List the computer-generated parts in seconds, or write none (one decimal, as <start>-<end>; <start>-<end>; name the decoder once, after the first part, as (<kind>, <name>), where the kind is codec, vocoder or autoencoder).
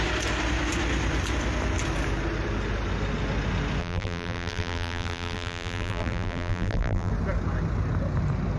3.8-7.1 (vocoder, BigVGAN v2)